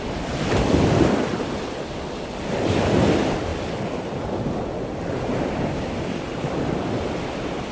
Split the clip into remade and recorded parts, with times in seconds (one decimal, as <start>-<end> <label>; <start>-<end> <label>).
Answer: 0.0-7.7 recorded